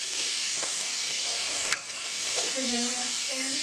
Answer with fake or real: fake